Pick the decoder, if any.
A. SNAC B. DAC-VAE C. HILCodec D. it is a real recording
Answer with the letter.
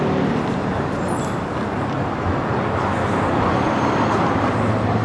D